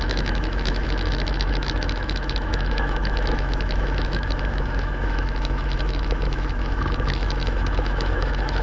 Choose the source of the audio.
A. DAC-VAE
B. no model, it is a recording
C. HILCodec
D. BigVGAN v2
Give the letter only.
A